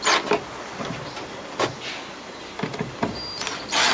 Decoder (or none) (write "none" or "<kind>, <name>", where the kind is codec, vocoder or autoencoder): none